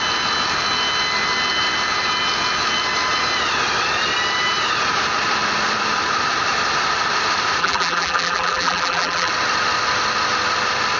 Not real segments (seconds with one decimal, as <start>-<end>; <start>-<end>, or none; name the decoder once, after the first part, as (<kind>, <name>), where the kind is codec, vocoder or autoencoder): 7.6-9.3 (vocoder, BigVGAN v2)